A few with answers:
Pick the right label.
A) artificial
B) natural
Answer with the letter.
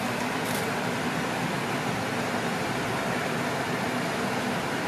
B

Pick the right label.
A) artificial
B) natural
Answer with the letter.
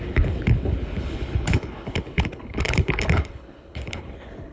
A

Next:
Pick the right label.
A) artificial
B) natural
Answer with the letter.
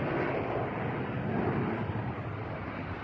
B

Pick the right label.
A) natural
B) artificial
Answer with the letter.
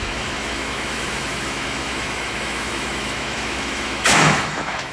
B